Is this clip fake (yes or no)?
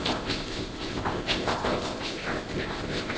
yes